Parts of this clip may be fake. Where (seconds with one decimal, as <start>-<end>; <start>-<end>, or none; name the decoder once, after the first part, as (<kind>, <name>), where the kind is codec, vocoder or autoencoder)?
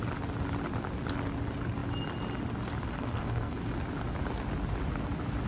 2.9-3.6 (codec, SNAC)